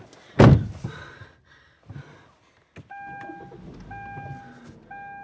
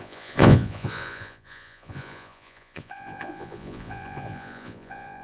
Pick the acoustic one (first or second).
first